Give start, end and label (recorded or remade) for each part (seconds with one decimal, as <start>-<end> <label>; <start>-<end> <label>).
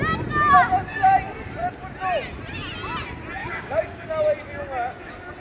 0.0-3.4 recorded; 3.4-4.1 remade; 4.1-5.4 recorded